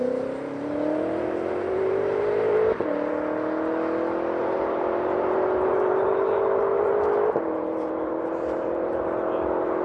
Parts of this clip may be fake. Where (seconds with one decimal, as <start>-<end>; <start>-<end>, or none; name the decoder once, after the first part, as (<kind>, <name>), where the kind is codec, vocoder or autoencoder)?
0.0-3.1 (vocoder, BigVGAN v2); 4.4-9.8